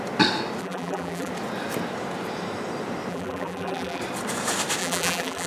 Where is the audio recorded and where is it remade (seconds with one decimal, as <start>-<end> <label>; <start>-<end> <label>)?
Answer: 0.0-0.6 recorded; 0.6-1.3 remade; 1.3-3.1 recorded; 3.1-4.0 remade; 4.0-4.8 recorded; 4.8-5.5 remade